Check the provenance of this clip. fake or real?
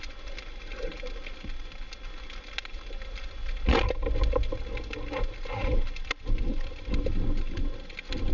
real